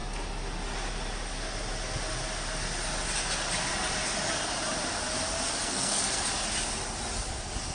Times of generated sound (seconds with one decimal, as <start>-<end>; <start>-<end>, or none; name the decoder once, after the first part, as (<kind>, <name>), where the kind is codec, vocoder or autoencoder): 5.6-6.3 (codec, SNAC)